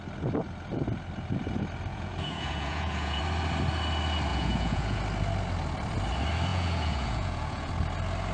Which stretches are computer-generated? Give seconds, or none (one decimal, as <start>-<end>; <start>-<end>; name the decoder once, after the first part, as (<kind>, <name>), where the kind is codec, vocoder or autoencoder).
1.9-3.2 (vocoder, Vocos); 4.3-5.0; 6.5-7.7